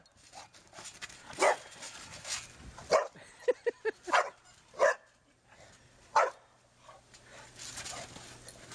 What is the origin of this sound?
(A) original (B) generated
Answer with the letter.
A